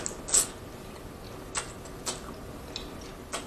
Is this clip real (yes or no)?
yes